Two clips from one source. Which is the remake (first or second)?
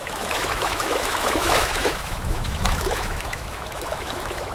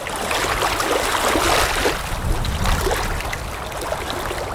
first